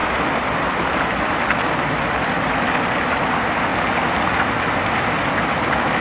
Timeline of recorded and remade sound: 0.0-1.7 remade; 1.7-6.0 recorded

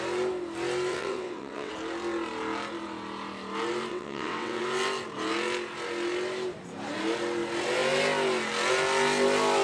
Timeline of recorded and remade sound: 0.0-0.9 recorded; 0.9-1.7 remade; 1.7-3.9 recorded; 3.9-4.6 remade; 4.6-9.6 recorded

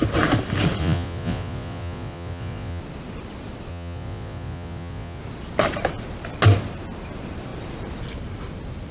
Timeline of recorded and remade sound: 0.0-0.8 recorded; 0.8-2.8 remade; 2.8-3.7 recorded; 3.7-5.2 remade; 5.2-8.9 recorded

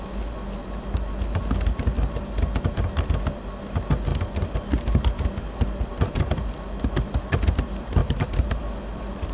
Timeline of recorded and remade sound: 0.0-5.9 recorded; 5.9-6.5 remade; 6.5-8.0 recorded; 8.0-8.6 remade; 8.6-9.3 recorded

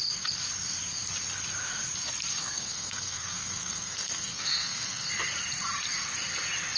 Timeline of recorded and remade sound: 0.0-2.3 recorded; 2.3-5.1 remade; 5.1-6.8 recorded

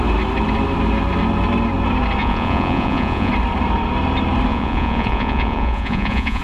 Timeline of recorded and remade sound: 0.0-2.2 recorded; 2.2-3.3 remade; 3.3-4.5 recorded; 4.5-6.4 remade

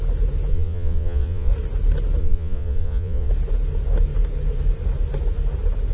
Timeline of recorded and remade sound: 0.0-0.5 recorded; 0.5-1.5 remade; 1.5-2.2 recorded; 2.2-3.3 remade; 3.3-5.9 recorded

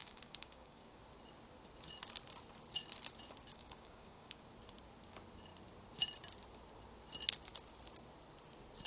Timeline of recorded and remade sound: 0.0-1.0 remade; 1.0-3.5 recorded; 3.5-4.4 remade; 4.4-8.9 recorded